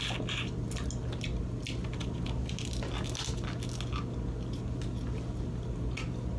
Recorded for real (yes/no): yes